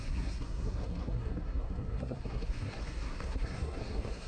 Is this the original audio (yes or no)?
no